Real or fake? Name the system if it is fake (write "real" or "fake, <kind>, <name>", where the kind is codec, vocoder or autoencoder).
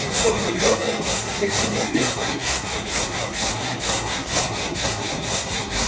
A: fake, codec, SNAC